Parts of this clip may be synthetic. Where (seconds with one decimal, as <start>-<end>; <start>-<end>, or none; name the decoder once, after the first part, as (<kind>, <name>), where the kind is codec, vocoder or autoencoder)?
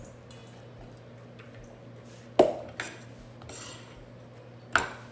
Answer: none